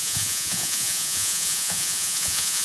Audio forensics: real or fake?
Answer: fake